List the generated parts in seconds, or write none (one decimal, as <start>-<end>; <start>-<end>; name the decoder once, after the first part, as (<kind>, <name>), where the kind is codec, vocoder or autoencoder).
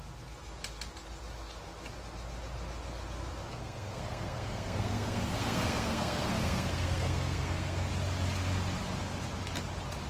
3.5-7.9 (codec, SNAC)